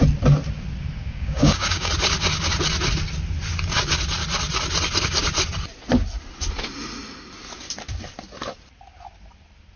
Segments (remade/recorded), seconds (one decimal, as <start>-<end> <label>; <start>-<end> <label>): 0.0-1.0 recorded; 1.0-1.9 remade; 1.9-9.8 recorded